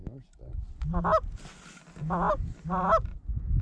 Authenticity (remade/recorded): recorded